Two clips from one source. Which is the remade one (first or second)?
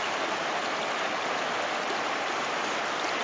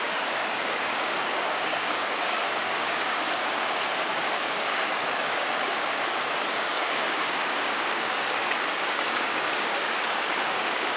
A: second